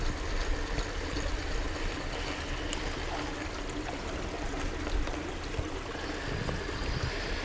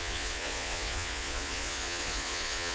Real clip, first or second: first